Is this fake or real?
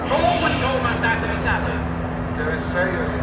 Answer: real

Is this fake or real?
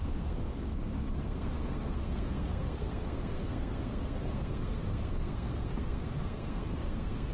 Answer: fake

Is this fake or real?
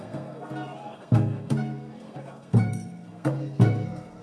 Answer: fake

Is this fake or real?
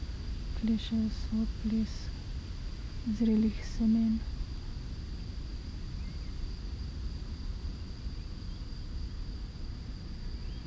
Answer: real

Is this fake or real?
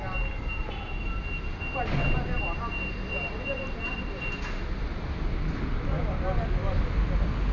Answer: real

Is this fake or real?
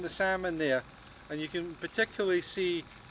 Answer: real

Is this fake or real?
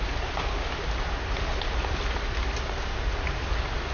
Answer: real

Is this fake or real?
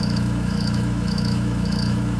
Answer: fake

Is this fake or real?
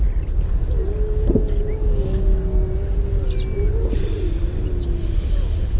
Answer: real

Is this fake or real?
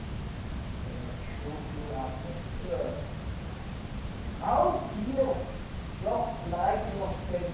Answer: fake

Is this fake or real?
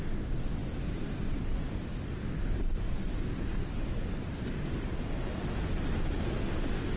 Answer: real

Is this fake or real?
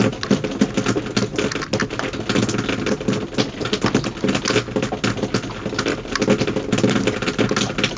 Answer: real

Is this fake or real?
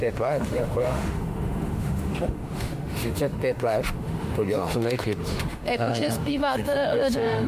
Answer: fake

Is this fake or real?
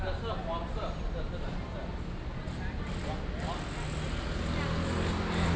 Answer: real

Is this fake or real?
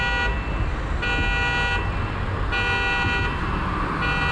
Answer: real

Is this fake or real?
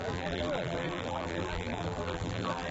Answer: fake